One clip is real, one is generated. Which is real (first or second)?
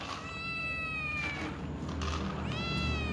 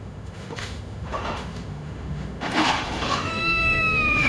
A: first